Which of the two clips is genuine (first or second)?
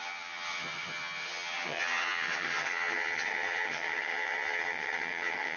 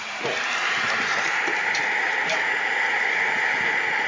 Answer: second